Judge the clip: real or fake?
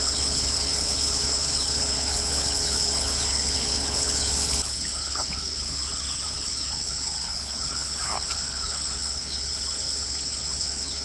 fake